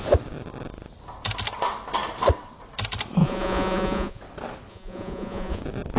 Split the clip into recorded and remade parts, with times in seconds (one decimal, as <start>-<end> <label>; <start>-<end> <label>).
0.0-3.2 recorded; 3.2-4.2 remade; 4.2-4.7 recorded; 4.7-5.6 remade; 5.6-6.0 recorded

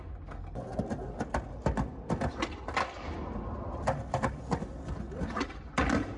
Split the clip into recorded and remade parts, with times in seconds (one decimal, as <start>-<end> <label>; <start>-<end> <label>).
0.0-6.2 recorded